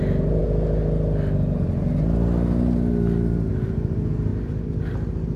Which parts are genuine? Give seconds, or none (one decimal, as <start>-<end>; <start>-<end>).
0.0-5.4